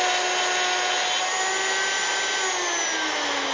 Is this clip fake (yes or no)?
no